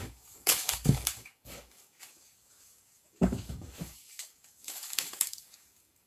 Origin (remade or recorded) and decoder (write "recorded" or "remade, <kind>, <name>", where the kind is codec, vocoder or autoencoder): remade, codec, DAC